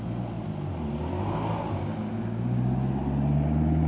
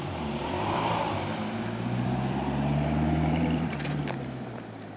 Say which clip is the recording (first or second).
first